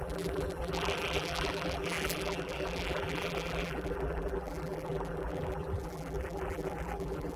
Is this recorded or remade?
remade